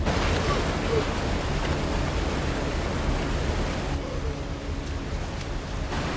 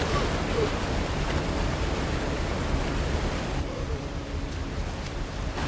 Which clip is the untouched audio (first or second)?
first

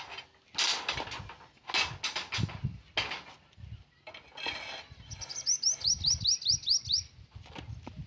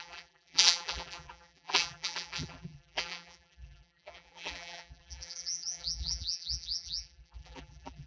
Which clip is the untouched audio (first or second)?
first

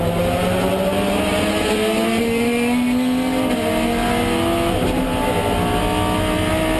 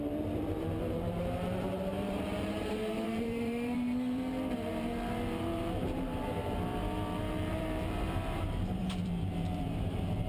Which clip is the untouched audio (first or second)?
first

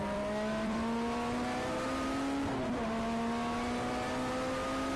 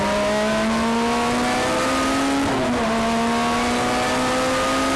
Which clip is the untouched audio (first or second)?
second